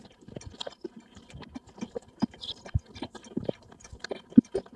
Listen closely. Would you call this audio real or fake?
real